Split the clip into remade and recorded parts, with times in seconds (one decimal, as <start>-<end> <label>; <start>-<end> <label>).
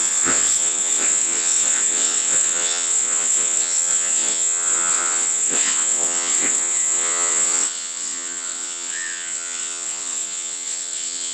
0.0-11.3 remade